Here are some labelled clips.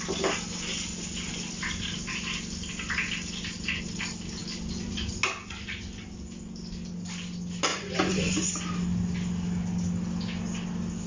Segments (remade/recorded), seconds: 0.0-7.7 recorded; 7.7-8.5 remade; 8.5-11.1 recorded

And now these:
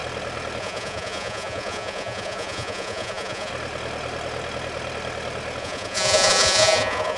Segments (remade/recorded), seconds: 0.0-0.6 recorded; 0.6-3.5 remade; 3.5-5.6 recorded; 5.6-7.2 remade